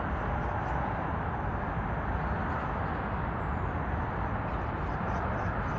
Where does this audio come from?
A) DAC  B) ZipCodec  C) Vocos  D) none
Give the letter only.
D